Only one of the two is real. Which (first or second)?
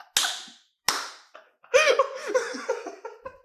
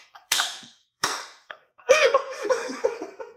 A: first